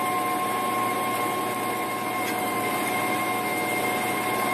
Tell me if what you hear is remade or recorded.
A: recorded